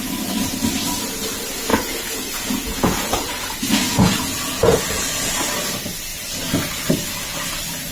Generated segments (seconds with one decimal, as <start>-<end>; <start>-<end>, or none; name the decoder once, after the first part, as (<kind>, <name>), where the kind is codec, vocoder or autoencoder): 1.7-5.4 (vocoder, Vocos)